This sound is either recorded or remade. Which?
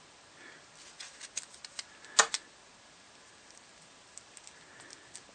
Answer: recorded